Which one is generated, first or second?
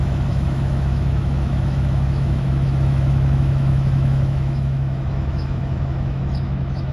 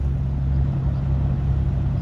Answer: first